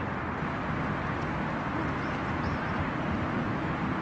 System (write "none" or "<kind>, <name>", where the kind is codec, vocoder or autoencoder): none